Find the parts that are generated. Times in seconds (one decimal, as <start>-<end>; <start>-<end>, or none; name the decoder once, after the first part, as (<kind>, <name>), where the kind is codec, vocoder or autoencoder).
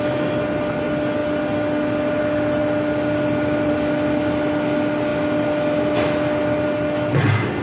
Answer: none